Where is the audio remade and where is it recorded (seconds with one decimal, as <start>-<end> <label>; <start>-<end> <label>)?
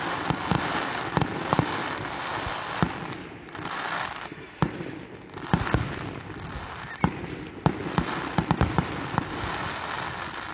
0.0-10.5 recorded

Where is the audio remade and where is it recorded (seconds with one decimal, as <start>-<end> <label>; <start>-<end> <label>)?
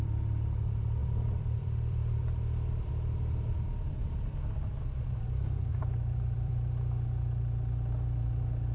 0.0-1.0 recorded; 1.0-2.9 remade; 2.9-5.7 recorded; 5.7-6.5 remade; 6.5-8.7 recorded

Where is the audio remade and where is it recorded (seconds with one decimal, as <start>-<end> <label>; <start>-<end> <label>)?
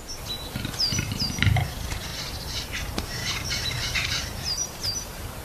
0.0-0.9 recorded; 0.9-1.7 remade; 1.7-2.1 recorded; 2.1-5.4 remade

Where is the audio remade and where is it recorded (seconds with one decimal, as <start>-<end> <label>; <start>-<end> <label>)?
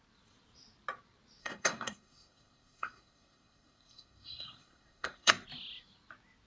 0.0-1.4 recorded; 1.4-5.3 remade; 5.3-6.5 recorded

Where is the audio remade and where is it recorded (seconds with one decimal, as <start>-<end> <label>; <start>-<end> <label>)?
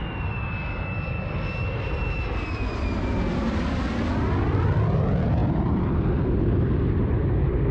0.0-7.7 recorded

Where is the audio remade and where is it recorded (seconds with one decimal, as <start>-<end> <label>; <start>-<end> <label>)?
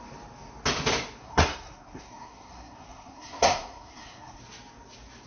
0.0-1.2 recorded; 1.2-4.4 remade; 4.4-5.3 recorded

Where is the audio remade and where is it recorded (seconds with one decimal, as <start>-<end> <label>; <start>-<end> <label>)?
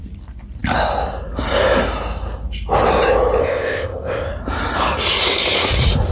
0.0-3.4 recorded; 3.4-4.3 remade; 4.3-6.1 recorded